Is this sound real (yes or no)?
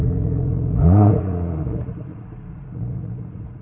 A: no